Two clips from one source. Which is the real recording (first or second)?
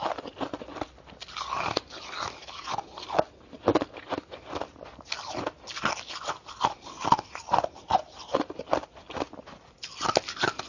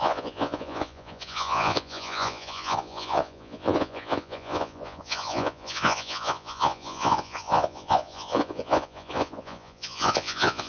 first